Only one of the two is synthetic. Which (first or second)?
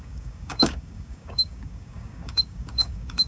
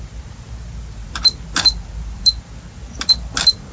first